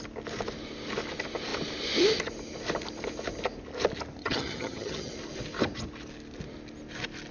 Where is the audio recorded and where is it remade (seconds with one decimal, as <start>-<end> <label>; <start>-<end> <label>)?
0.0-4.2 recorded; 4.2-5.1 remade; 5.1-7.3 recorded